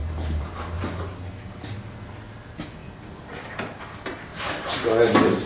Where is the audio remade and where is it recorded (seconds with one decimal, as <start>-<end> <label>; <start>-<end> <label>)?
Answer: 0.0-0.9 remade; 0.9-4.3 recorded; 4.3-4.9 remade; 4.9-5.5 recorded